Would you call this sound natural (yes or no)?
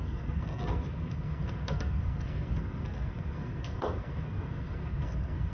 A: no